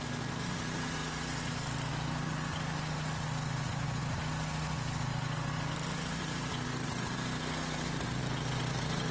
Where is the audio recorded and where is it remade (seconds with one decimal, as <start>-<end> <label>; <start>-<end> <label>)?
0.0-9.1 recorded